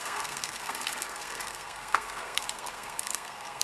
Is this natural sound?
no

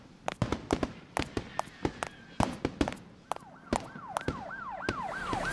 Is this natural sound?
yes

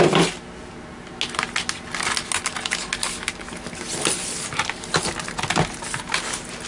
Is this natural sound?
yes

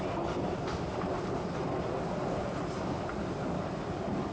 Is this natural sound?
yes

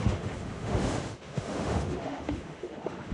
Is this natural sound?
no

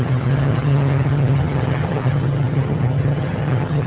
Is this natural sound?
no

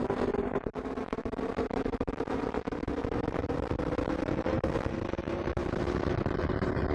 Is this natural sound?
no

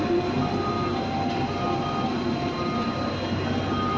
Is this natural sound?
yes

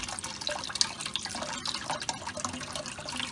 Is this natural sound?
yes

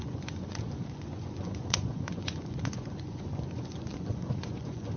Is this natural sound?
no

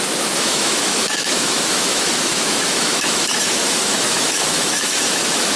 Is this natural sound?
no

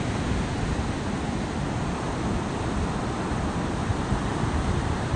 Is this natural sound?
no